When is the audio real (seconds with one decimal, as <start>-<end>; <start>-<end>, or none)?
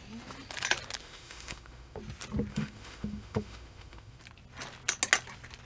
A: 0.0-1.0; 2.0-2.5; 4.2-5.6